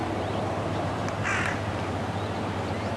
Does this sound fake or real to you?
real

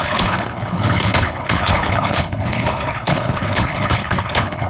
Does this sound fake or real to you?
fake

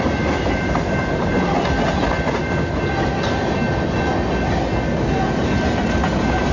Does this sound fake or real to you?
real